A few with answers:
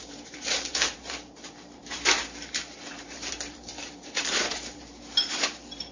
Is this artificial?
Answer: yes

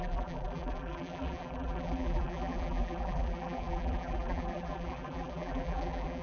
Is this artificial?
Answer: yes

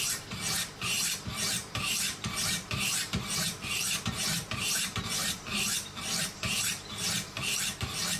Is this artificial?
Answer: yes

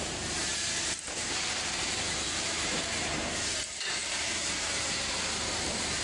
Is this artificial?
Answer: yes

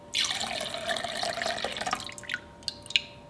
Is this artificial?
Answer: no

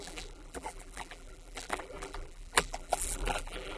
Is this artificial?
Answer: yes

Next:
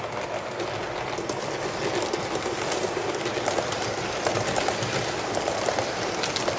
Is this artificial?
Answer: no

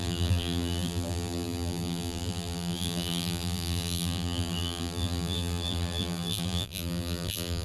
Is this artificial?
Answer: yes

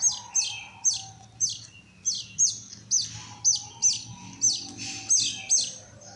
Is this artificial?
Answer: no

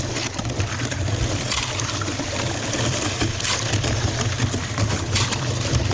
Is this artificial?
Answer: yes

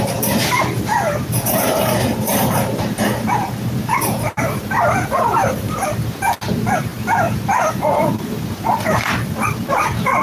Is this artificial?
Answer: yes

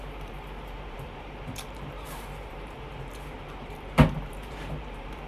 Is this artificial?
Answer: yes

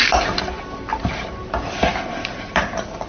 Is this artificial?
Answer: yes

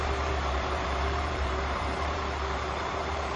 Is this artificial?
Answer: yes